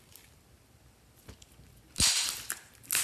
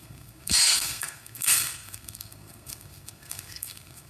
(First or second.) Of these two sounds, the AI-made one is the second